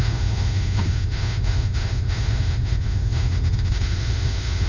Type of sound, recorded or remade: remade